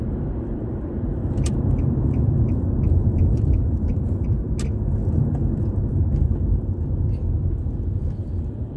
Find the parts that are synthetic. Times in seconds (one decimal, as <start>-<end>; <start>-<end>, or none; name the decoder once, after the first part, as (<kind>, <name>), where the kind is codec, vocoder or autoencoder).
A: 0.0-4.5 (vocoder, BigVGAN v2); 5.0-6.0